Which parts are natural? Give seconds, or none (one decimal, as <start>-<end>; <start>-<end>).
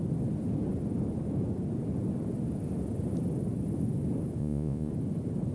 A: 0.0-4.4; 4.9-5.5